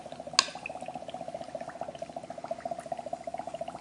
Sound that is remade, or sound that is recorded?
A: recorded